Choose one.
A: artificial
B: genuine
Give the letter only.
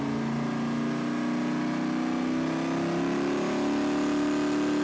B